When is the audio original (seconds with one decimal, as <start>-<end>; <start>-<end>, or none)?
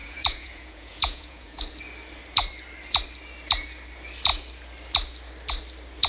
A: 1.6-6.1